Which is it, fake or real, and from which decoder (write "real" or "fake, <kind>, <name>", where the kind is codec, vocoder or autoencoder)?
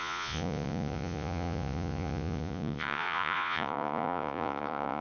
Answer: fake, vocoder, Vocos